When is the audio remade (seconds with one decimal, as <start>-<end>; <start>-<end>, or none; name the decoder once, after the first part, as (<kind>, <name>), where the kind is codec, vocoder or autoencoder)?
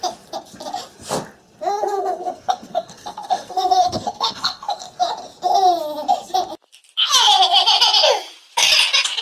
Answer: 1.7-4.8 (codec, SNAC)